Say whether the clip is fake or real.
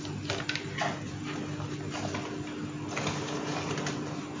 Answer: real